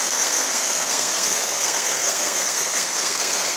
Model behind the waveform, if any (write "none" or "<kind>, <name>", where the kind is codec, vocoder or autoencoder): codec, SNAC